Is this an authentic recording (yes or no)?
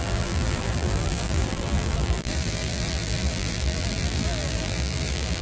no